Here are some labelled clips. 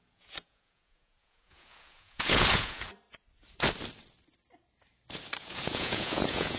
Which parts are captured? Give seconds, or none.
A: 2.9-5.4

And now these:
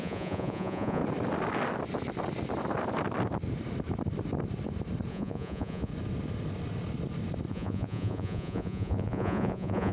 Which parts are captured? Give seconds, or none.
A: 1.0-5.1; 5.9-7.5